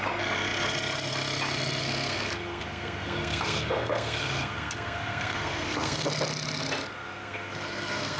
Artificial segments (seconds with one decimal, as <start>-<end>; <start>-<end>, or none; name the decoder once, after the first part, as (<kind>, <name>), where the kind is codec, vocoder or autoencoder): 1.8-6.1 (codec, SNAC); 6.9-8.2